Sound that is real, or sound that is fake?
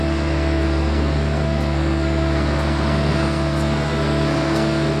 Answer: fake